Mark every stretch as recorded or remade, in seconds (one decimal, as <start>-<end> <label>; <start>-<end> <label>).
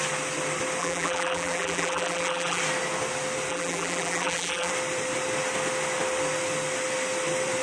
0.0-0.8 recorded; 0.8-2.6 remade; 2.6-3.5 recorded; 3.5-4.7 remade; 4.7-7.6 recorded